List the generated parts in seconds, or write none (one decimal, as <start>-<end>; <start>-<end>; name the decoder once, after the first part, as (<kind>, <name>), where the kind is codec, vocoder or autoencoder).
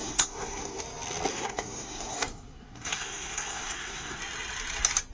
0.0-0.8 (codec, SNAC); 1.3-4.2